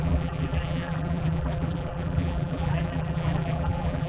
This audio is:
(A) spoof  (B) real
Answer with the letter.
A